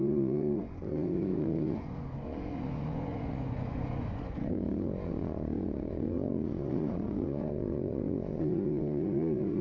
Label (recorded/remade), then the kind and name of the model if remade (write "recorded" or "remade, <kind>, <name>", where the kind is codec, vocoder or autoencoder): remade, vocoder, Vocos